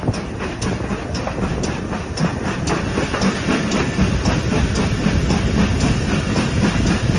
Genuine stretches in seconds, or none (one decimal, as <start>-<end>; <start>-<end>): 0.0-7.2